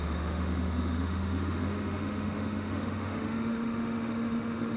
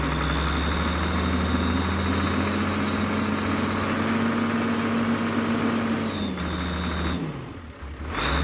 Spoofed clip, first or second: first